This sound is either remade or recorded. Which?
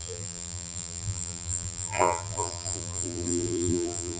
remade